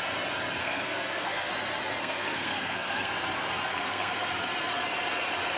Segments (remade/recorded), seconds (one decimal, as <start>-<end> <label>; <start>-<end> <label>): 0.0-0.6 recorded; 0.6-1.5 remade; 1.5-2.0 recorded; 2.0-3.1 remade; 3.1-3.7 recorded; 3.7-4.3 remade; 4.3-5.6 recorded